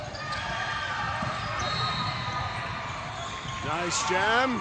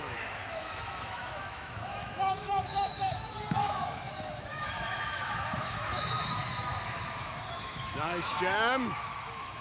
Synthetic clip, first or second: second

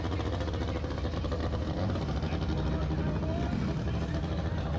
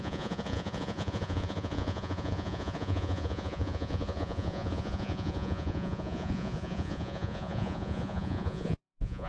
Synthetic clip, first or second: second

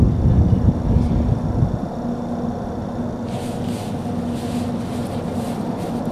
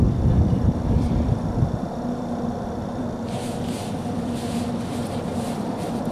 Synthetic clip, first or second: second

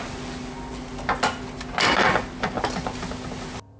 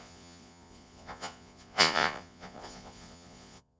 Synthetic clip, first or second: second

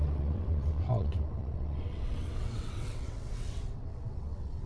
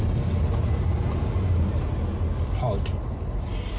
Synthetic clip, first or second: first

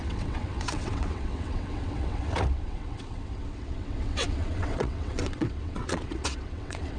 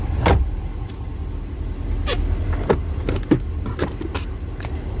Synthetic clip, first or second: first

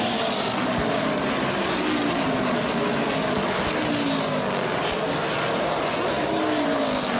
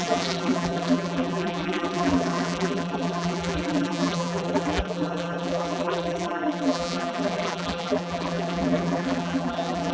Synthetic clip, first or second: second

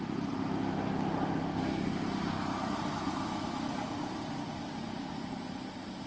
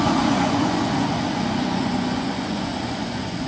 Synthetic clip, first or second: second